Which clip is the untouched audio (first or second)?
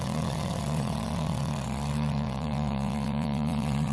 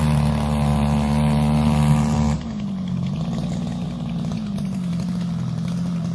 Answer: second